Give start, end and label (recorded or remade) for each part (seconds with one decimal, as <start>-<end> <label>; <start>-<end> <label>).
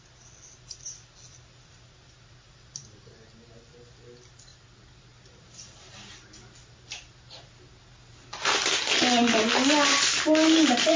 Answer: 0.0-11.0 recorded